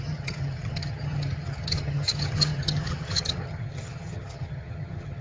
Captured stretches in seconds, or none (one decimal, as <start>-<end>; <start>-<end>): none